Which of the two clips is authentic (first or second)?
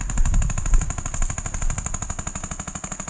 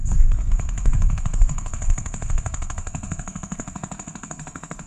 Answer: first